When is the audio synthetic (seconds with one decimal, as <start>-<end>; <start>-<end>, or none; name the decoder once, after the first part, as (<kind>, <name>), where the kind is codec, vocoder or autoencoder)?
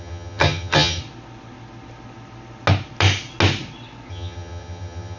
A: 0.0-1.0 (vocoder, HiFi-GAN); 4.1-5.2